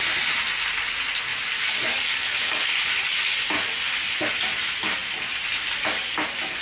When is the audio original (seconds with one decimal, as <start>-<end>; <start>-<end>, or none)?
0.0-6.6